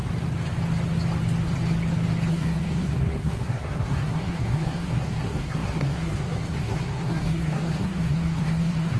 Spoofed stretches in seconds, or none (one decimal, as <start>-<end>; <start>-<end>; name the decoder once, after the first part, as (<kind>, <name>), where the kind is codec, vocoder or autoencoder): 2.3-9.0 (codec, SNAC)